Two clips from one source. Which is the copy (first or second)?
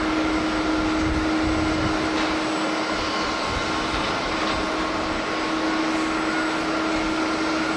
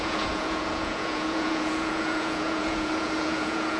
second